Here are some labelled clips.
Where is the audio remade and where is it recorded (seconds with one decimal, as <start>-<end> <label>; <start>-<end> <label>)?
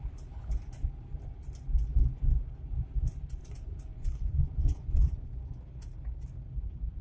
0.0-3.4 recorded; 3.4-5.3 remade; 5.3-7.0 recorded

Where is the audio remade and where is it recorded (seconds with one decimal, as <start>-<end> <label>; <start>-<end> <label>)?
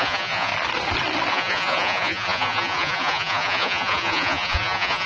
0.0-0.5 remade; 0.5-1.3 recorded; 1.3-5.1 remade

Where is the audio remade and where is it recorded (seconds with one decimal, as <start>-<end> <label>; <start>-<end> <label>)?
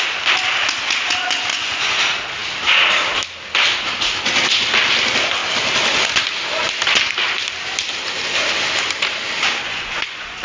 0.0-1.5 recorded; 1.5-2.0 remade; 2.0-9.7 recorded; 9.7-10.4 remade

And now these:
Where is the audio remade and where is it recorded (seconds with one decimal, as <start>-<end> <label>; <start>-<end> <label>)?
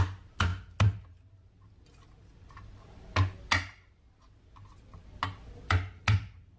0.0-6.6 recorded